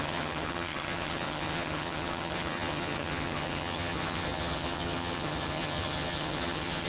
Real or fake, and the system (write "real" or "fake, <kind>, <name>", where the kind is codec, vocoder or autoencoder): fake, vocoder, HiFi-GAN